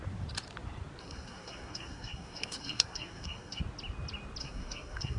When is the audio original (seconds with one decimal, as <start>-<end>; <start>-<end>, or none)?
0.0-1.0; 3.6-4.4